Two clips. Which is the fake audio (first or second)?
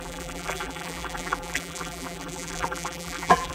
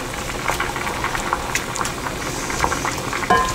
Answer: first